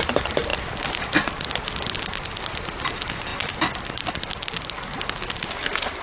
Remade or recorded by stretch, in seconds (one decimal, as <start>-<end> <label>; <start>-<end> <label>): 0.0-6.0 recorded